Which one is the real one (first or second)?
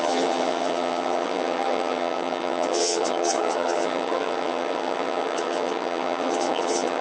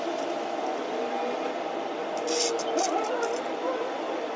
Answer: second